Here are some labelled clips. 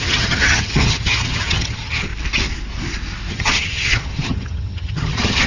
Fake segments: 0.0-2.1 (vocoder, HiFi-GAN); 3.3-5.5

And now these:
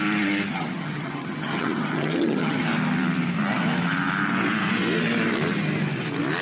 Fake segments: 0.5-2.6 (vocoder, HiFi-GAN)

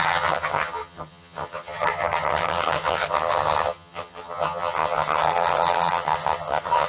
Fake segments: 0.0-6.9 (vocoder, HiFi-GAN)

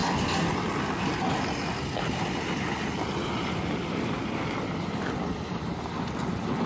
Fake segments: none